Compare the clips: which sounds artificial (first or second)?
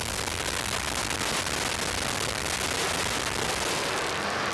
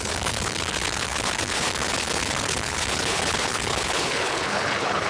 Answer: second